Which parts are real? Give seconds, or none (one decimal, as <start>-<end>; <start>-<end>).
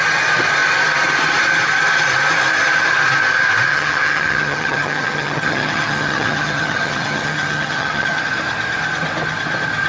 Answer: 0.0-3.7; 8.2-9.9